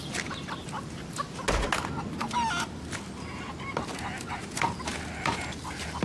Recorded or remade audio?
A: recorded